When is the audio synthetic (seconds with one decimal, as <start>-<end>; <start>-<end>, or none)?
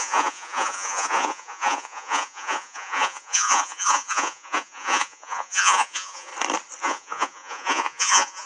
0.0-6.3; 6.8-8.5